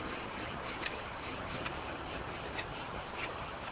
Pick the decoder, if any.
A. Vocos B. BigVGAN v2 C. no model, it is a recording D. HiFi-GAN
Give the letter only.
D